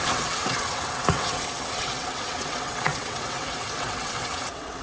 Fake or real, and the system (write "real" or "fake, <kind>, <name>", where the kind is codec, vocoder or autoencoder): fake, vocoder, WaveNeXt